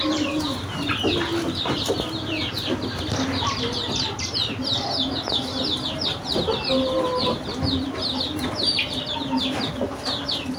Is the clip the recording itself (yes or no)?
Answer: yes